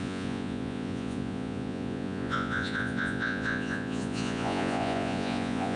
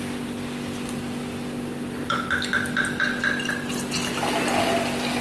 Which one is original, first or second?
second